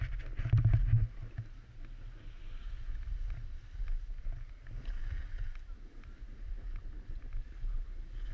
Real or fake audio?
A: real